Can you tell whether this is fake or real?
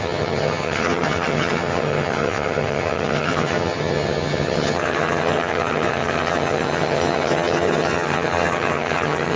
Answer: fake